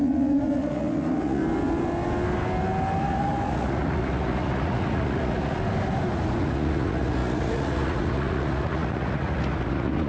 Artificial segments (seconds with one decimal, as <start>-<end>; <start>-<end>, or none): 0.0-1.4; 3.0-5.6; 6.4-10.1